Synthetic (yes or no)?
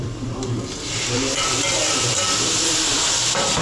yes